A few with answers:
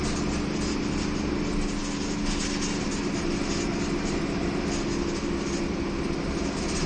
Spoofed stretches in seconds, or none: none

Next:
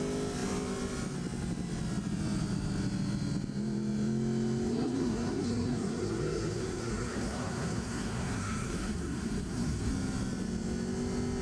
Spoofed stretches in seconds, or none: 4.7-9.9 (codec, SNAC)

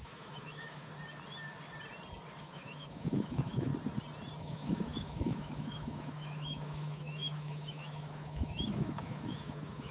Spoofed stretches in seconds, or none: 0.0-0.9 (autoencoder, DAC-VAE); 2.4-3.7; 4.4-9.9

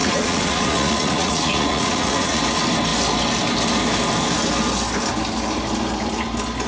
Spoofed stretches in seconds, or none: 0.0-2.4 (vocoder, Vocos)

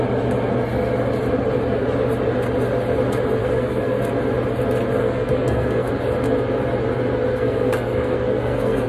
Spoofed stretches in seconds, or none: 3.4-4.0 (codec, SNAC); 5.0-5.9; 7.3-8.9

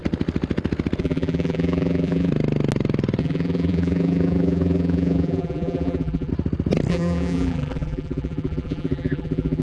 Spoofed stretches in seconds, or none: 1.0-2.3 (vocoder, BigVGAN v2); 3.2-6.3; 6.9-9.6

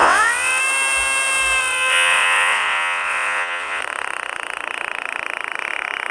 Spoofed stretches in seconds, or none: 0.0-0.6 (vocoder, WaveNeXt); 1.6-3.8